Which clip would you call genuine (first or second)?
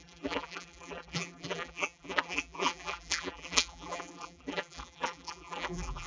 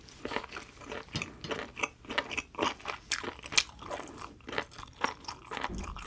second